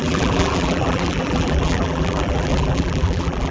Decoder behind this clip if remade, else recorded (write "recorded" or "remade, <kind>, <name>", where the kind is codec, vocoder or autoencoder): remade, vocoder, BigVGAN v2